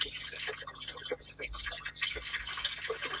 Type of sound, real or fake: real